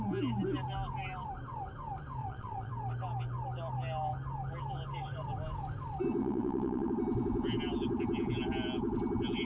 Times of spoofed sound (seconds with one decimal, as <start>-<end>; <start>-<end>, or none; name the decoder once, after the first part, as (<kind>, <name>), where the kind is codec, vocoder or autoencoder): 2.2-2.7 (vocoder, WaveNeXt); 6.2-6.9